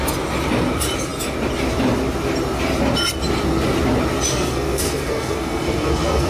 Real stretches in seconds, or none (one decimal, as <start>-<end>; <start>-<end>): 0.0-4.3